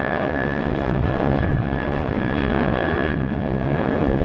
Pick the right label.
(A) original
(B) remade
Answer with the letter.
B